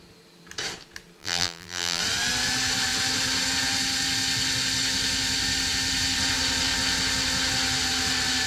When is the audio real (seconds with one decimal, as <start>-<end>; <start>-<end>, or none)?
0.0-1.2; 2.0-8.5